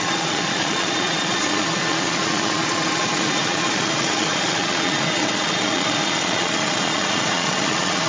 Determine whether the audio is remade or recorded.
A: remade